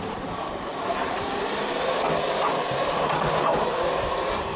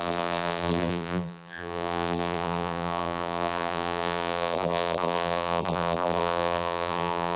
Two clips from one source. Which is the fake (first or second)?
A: second